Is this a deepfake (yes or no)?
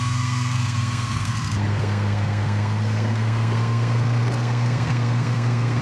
yes